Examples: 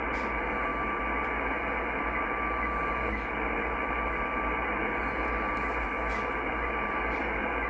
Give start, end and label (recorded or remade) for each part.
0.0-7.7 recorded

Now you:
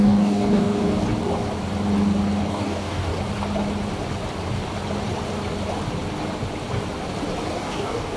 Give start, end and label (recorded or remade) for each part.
0.0-1.0 remade; 1.0-2.5 recorded; 2.5-3.1 remade; 3.1-7.5 recorded; 7.5-8.2 remade

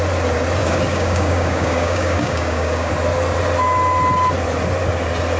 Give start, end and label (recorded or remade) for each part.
0.0-0.6 recorded; 0.6-2.9 remade; 2.9-5.4 recorded

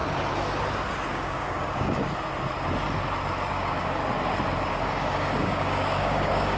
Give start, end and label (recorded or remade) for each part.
0.0-1.1 recorded; 1.1-2.1 remade; 2.1-3.5 recorded; 3.5-4.0 remade; 4.0-4.7 recorded; 4.7-6.6 remade